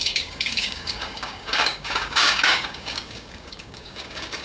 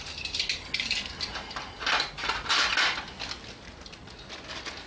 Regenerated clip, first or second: first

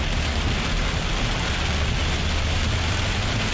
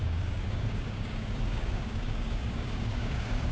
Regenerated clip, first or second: second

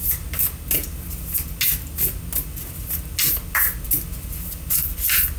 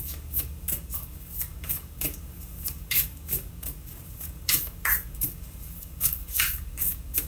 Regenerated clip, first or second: second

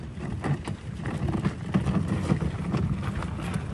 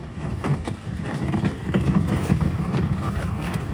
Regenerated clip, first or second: second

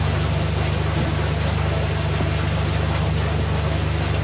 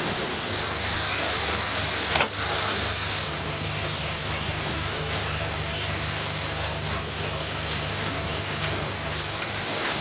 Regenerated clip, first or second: second